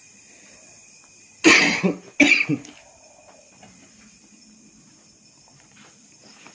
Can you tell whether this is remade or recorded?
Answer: recorded